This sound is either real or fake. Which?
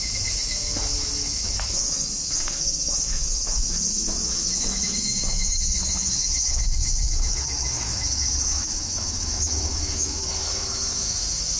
fake